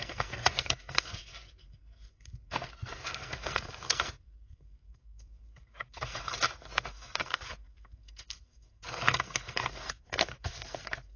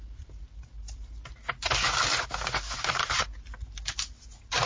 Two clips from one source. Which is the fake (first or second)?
first